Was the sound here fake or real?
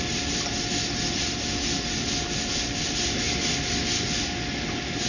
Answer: real